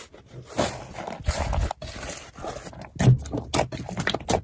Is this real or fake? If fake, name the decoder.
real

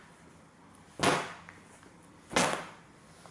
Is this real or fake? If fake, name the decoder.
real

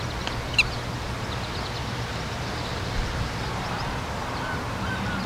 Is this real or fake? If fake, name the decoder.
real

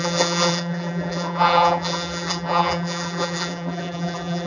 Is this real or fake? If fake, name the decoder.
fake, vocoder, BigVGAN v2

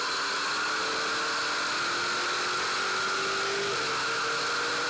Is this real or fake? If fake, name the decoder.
real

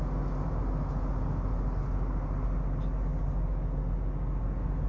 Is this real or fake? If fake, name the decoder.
real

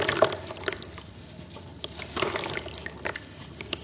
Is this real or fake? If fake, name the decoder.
real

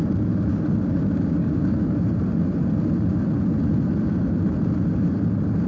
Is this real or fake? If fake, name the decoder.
real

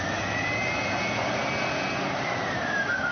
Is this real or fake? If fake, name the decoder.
real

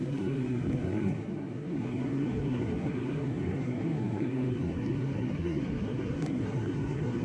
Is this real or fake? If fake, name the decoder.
fake, codec, SNAC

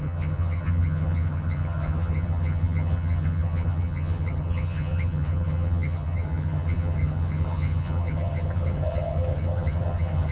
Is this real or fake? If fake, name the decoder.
fake, vocoder, HiFi-GAN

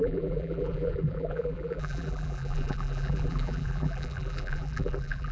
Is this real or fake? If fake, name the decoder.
fake, vocoder, BigVGAN v2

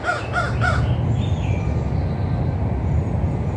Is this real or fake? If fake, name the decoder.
real